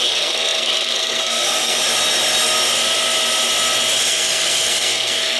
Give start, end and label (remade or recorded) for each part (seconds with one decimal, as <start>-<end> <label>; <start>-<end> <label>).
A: 0.0-1.8 remade; 1.8-4.0 recorded; 4.0-5.4 remade